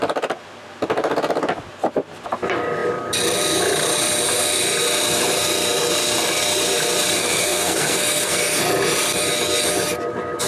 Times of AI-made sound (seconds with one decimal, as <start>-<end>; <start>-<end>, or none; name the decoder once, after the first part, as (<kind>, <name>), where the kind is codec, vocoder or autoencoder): 7.2-8.6 (codec, SNAC)